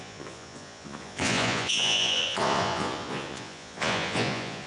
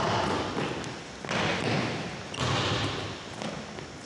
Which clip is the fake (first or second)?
first